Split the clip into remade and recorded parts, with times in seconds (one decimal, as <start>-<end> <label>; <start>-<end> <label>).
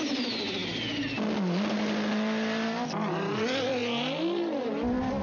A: 0.0-5.2 recorded